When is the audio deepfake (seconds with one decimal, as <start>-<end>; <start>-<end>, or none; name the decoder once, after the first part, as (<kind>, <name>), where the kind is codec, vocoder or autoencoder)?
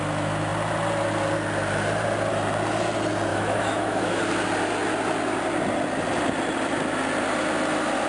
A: 3.3-4.2 (autoencoder, DAC-VAE)